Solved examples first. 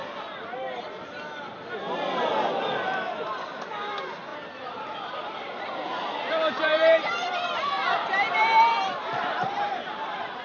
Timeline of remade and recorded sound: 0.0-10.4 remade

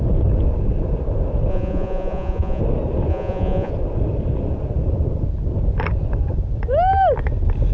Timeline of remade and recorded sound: 0.0-1.5 recorded; 1.5-2.6 remade; 2.6-3.1 recorded; 3.1-3.7 remade; 3.7-7.7 recorded

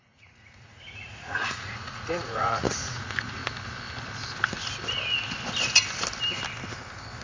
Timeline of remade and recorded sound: 0.0-3.4 remade; 3.4-7.2 recorded